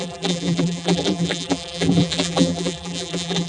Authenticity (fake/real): fake